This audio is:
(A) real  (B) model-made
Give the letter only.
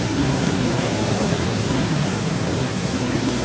B